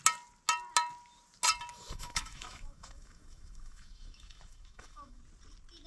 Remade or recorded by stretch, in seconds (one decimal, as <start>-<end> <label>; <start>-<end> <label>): 0.0-1.7 recorded; 1.7-5.2 remade; 5.2-5.9 recorded